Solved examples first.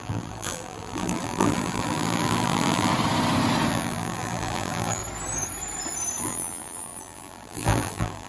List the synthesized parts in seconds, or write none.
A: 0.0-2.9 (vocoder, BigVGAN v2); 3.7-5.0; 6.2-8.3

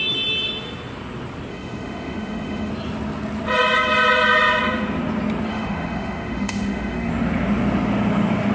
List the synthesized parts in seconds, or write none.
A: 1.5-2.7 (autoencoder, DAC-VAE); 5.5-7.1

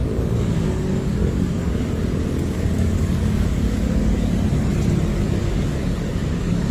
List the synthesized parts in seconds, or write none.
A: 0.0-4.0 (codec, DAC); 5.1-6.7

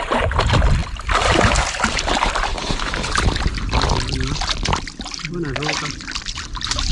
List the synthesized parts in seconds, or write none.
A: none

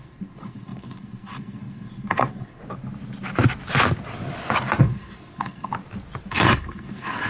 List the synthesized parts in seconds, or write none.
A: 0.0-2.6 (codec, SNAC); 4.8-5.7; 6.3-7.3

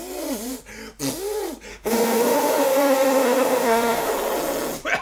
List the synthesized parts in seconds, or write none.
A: 1.7-4.1 (autoencoder, DAC-VAE)

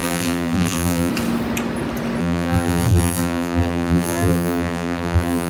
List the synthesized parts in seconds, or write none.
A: 0.0-1.1 (vocoder, BigVGAN v2); 2.2-5.5